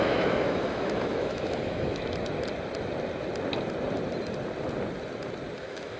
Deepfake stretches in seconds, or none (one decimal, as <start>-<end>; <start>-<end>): 0.0-2.0; 5.6-6.0